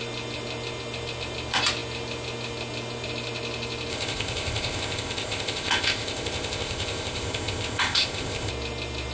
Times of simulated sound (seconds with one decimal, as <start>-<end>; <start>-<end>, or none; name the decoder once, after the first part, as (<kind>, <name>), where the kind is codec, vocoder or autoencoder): 3.9-8.5 (codec, ZipCodec)